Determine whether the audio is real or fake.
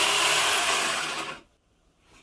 real